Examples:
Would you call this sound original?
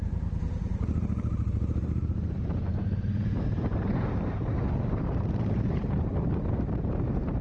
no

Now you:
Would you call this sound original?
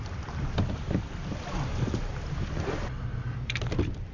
no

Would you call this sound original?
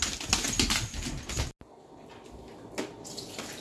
yes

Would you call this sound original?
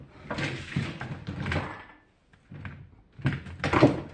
yes